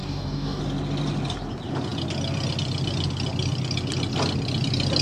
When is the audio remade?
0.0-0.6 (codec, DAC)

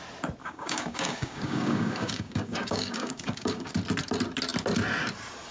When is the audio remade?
0.4-3.7 (codec, DAC)

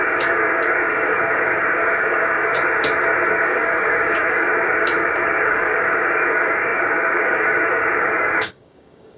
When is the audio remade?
0.0-2.5 (codec, DAC); 3.3-9.2

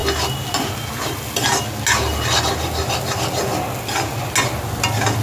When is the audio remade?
none